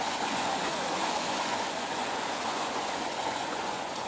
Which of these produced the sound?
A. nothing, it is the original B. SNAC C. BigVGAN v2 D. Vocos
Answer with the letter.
D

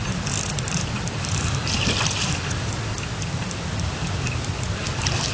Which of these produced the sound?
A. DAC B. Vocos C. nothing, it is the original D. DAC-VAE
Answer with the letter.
C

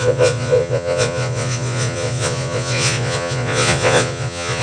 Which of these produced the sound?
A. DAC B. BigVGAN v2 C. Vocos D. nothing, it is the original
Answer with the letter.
C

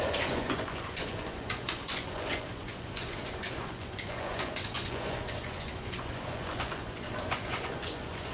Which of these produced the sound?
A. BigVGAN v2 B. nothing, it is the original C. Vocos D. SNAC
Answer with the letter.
C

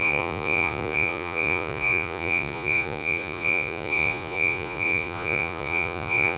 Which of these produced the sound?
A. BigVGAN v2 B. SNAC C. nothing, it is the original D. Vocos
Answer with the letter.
D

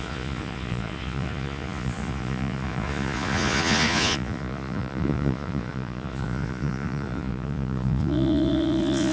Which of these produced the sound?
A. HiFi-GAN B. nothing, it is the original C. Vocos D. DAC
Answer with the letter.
C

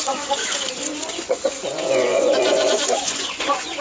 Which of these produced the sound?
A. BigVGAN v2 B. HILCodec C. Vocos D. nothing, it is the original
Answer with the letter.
C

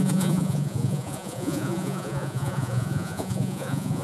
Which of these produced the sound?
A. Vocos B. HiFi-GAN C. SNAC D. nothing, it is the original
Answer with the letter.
A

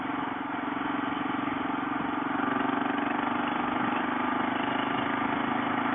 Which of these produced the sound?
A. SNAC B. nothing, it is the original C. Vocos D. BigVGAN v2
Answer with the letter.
B